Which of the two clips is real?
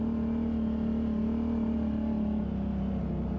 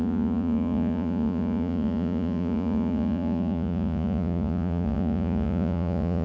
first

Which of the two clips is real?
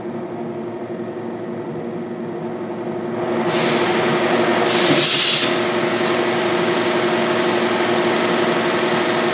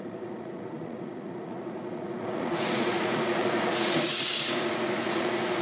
first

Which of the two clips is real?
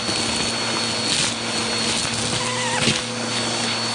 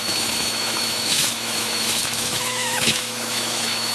first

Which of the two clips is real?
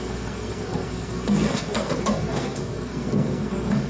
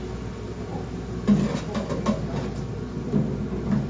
second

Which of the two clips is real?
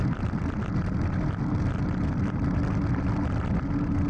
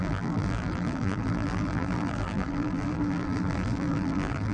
first